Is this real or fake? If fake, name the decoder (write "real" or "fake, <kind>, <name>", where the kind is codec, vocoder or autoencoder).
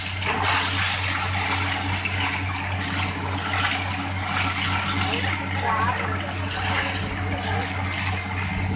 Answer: real